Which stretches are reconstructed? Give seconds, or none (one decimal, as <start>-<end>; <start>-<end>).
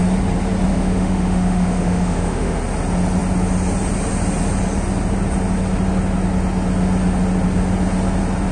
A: 0.7-2.6